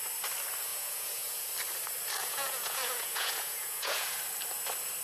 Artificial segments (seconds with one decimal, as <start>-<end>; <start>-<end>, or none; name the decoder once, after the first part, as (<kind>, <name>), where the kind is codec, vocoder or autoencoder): 0.7-1.5 (vocoder, Vocos); 2.2-4.2